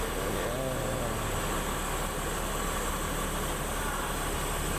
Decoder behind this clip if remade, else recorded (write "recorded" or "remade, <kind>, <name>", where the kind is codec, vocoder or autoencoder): recorded